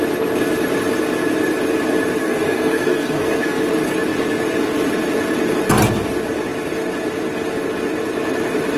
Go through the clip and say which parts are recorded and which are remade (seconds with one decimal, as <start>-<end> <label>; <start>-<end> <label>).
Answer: 0.0-2.2 recorded; 2.2-3.6 remade; 3.6-8.8 recorded